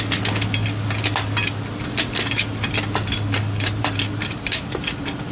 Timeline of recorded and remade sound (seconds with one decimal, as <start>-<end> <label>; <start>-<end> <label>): 0.0-3.4 recorded; 3.4-4.6 remade; 4.6-5.3 recorded